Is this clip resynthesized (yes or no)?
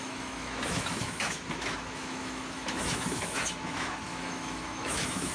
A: yes